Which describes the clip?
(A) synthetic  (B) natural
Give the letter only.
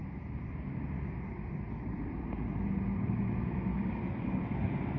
A